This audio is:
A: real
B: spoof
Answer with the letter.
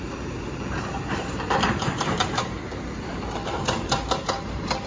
B